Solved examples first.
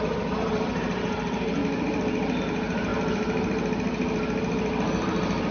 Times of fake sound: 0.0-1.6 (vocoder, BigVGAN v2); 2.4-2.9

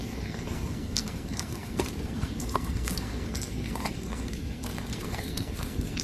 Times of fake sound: 0.0-6.0 (codec, SNAC)

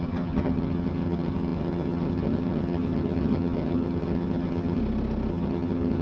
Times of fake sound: 0.0-4.8 (vocoder, HiFi-GAN); 5.3-6.0

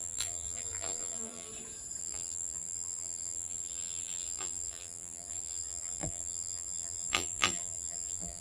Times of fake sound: 0.0-1.5 (vocoder, BigVGAN v2); 2.0-8.4

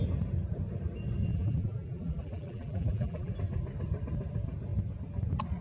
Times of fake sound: 1.3-3.3 (vocoder, BigVGAN v2)

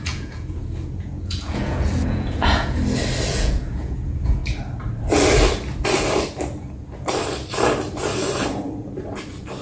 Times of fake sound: 0.0-2.8 (vocoder, Vocos); 3.3-4.4